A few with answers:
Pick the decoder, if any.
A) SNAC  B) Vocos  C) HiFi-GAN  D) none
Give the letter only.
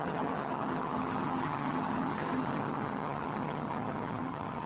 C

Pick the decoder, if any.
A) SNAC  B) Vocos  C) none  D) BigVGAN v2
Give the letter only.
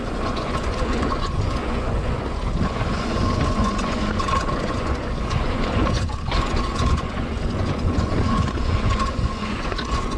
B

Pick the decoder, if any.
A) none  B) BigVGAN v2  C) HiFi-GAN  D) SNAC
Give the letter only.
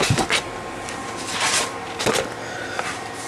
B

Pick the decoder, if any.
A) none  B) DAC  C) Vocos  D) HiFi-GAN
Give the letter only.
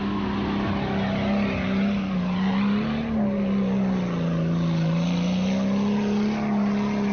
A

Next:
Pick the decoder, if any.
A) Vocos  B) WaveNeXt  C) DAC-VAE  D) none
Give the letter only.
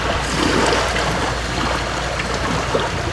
D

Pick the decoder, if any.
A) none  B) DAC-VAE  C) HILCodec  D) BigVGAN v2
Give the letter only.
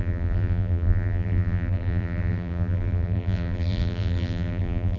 D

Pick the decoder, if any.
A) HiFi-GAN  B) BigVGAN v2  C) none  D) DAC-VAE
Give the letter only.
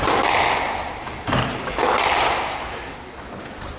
C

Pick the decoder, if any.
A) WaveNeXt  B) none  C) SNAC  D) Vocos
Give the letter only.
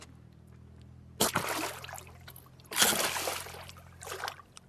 B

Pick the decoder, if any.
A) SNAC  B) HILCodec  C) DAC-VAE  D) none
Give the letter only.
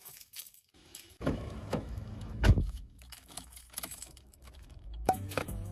C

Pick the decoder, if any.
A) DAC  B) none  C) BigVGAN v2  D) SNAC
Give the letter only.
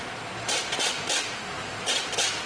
B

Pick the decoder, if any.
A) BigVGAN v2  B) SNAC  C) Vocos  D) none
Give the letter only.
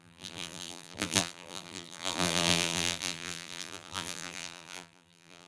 A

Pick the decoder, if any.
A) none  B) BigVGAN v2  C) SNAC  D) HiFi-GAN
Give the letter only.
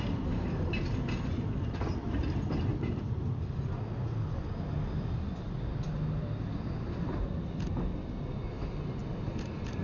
A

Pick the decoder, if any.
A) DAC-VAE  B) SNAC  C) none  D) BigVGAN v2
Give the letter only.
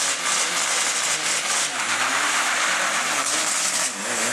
C